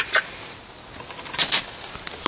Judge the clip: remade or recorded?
recorded